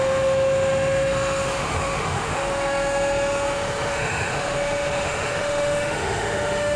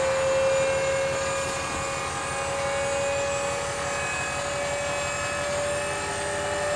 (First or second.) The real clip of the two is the second